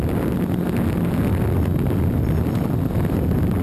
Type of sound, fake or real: real